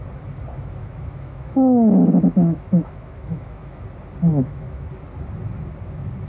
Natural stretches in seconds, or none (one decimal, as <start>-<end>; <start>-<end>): 0.0-0.8; 3.8-4.3; 4.9-6.3